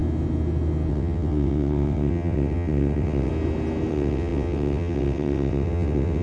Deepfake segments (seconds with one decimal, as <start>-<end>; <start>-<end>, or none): 0.9-3.3; 3.9-6.2